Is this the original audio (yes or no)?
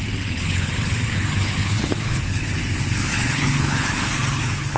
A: no